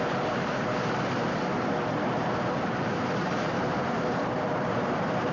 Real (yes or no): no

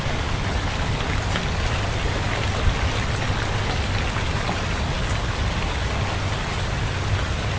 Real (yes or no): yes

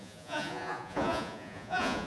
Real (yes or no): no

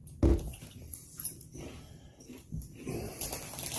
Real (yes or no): yes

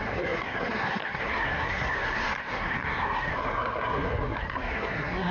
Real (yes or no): no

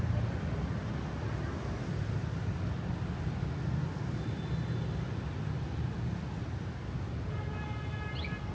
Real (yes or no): yes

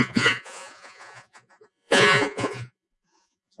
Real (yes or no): no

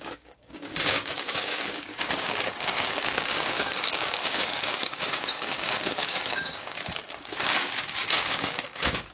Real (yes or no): no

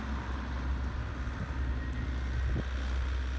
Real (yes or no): yes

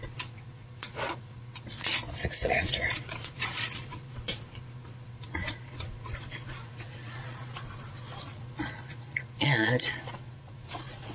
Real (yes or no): no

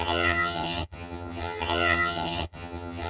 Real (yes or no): no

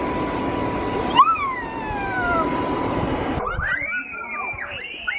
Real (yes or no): no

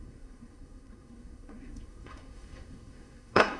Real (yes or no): no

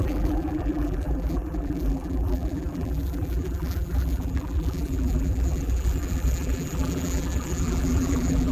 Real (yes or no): no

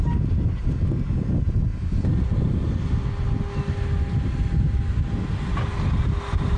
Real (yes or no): yes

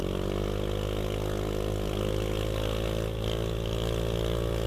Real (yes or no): yes